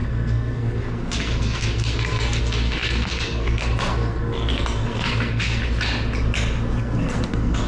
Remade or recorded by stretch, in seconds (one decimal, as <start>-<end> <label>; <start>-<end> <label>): 0.0-5.6 remade; 5.6-6.8 recorded; 6.8-7.7 remade